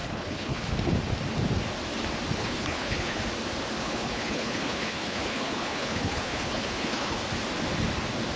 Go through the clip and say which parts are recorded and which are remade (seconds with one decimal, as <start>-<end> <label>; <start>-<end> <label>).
0.0-0.7 remade; 0.7-2.4 recorded; 2.4-3.2 remade; 3.2-3.8 recorded; 3.8-7.2 remade; 7.2-8.4 recorded